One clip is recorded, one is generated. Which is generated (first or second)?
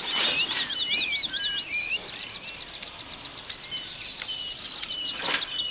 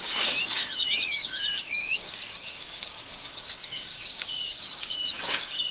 second